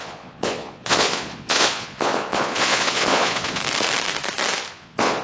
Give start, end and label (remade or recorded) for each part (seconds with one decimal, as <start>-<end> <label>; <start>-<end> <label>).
0.0-3.6 remade; 3.6-4.7 recorded; 4.7-5.2 remade

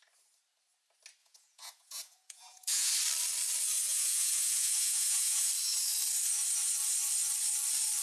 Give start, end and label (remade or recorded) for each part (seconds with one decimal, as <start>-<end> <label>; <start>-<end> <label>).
0.0-1.2 recorded; 1.2-2.9 remade; 2.9-3.9 recorded; 3.9-5.5 remade; 5.5-8.0 recorded